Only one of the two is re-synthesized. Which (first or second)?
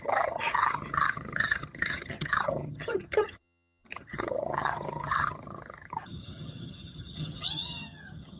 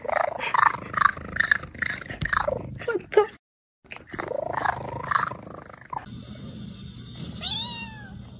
first